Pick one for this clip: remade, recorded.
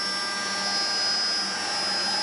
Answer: recorded